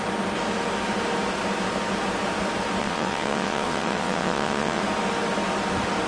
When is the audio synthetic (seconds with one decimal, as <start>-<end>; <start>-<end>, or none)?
2.8-4.8